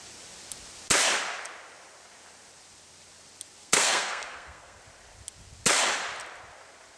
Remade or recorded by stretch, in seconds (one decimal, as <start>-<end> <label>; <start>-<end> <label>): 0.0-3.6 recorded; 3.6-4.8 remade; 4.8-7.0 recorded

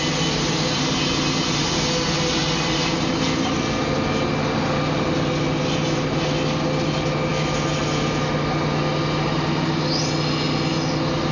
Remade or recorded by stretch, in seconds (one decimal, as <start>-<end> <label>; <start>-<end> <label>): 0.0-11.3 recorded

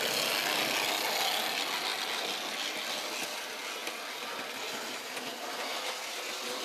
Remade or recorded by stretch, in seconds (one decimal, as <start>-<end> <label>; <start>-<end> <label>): 0.0-6.6 recorded

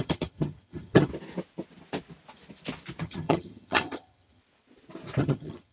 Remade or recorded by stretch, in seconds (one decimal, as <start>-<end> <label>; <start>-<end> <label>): 0.0-1.1 remade; 1.1-3.0 recorded; 3.0-4.4 remade; 4.4-5.2 recorded; 5.2-5.7 remade